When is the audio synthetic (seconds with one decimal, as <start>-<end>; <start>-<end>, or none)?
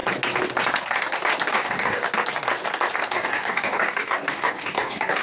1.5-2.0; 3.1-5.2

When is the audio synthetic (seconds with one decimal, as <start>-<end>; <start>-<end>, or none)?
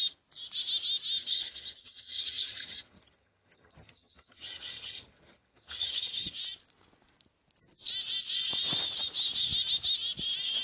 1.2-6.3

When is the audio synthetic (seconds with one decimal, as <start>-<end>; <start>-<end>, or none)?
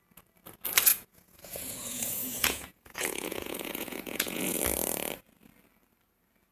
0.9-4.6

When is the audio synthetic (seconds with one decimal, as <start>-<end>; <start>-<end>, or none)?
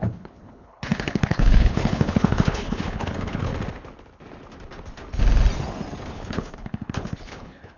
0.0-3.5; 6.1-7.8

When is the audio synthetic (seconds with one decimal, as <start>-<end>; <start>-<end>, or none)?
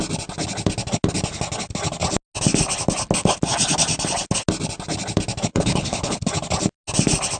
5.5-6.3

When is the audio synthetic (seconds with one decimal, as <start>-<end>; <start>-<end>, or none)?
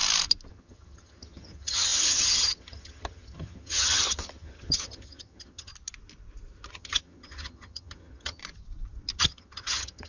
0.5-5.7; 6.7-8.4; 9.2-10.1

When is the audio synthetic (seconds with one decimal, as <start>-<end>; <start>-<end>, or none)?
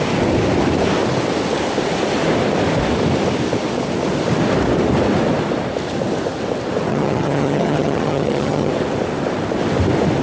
6.9-8.7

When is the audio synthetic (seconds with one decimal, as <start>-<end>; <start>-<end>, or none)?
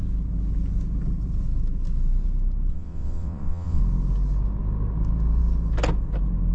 2.7-3.8